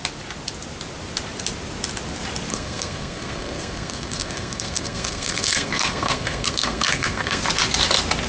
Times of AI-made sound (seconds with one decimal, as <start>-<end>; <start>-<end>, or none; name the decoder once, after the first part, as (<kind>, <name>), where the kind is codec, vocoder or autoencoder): 2.5-7.4 (codec, SNAC)